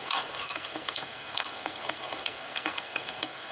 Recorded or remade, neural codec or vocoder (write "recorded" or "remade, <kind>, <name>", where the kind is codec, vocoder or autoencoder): remade, codec, SNAC